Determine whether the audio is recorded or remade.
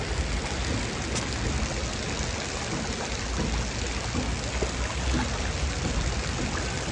recorded